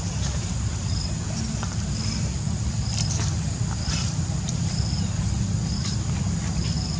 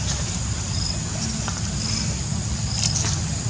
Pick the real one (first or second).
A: second